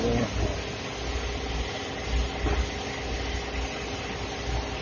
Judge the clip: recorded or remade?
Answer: recorded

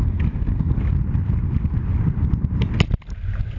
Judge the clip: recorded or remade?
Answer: recorded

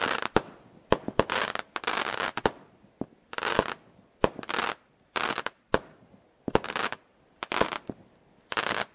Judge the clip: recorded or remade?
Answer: recorded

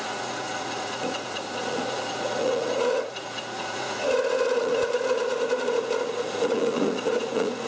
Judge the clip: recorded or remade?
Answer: remade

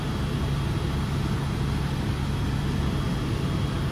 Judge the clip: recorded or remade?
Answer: recorded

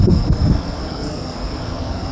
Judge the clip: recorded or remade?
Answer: remade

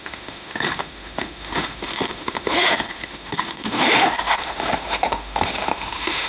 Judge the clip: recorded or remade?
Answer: remade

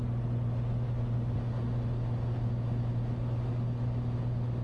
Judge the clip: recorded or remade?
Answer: recorded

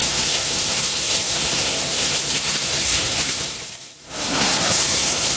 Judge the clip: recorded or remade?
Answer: remade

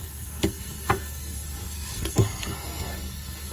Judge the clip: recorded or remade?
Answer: remade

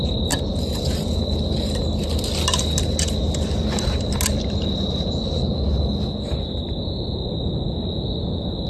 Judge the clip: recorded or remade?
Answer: recorded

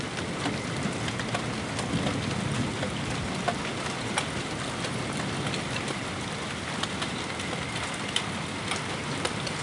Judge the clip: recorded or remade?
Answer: recorded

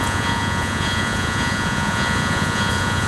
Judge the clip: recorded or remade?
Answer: remade